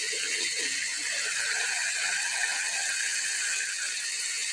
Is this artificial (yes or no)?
no